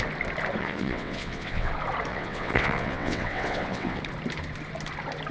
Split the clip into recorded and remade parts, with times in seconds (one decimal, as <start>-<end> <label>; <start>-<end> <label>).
0.0-0.6 recorded; 0.6-1.7 remade; 1.7-2.1 recorded; 2.1-4.0 remade; 4.0-5.3 recorded